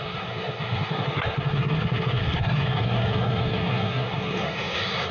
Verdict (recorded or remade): remade